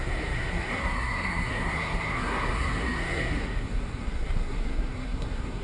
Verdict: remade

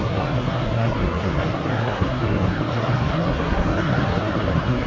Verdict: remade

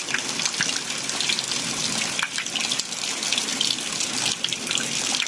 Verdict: recorded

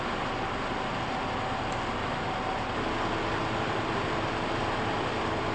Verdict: recorded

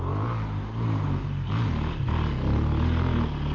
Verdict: recorded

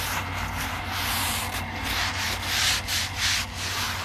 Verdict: recorded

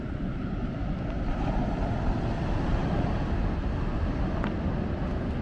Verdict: recorded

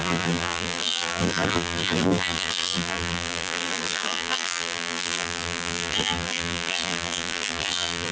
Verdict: remade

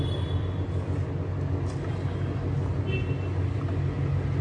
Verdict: recorded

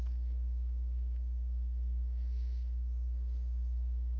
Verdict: remade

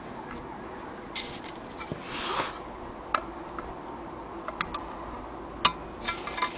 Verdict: recorded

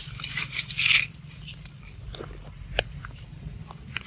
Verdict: remade